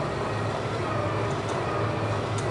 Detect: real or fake real